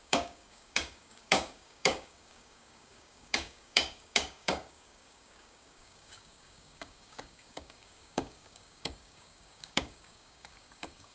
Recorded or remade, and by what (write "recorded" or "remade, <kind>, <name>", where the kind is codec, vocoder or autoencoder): remade, codec, DAC